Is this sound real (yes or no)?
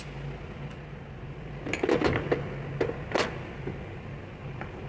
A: yes